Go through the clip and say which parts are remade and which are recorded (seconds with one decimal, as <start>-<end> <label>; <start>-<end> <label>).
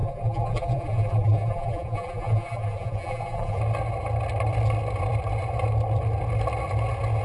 0.0-3.6 remade; 3.6-7.2 recorded